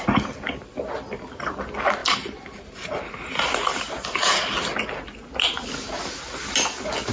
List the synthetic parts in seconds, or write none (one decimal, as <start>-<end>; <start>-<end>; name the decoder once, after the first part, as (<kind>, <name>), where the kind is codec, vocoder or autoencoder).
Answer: none